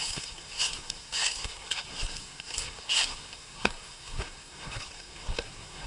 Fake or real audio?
fake